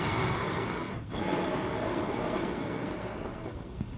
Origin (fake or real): fake